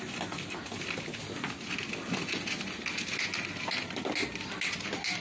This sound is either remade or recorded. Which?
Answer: recorded